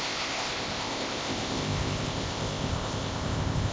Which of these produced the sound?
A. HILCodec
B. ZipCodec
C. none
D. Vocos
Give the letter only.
B